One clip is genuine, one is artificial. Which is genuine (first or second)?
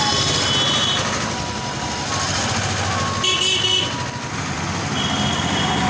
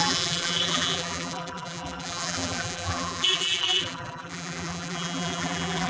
first